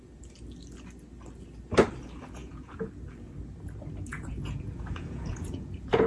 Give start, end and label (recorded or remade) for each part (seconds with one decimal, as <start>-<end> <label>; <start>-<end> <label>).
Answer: 0.0-2.4 recorded; 2.4-2.9 remade; 2.9-4.1 recorded; 4.1-6.1 remade